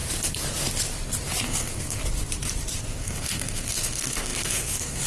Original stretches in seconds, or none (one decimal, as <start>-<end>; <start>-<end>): 0.0-1.4; 2.0-3.0